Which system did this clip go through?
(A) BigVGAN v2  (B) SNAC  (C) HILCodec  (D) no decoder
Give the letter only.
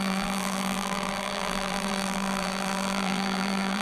A